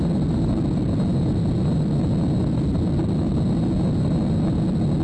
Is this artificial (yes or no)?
no